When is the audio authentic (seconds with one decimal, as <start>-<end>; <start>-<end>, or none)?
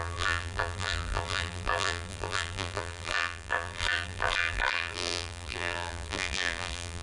none